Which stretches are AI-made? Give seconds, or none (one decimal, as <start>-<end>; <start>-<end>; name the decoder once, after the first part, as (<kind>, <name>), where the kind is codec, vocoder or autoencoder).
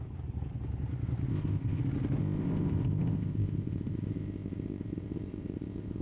1.3-1.8 (codec, ZipCodec); 2.2-6.0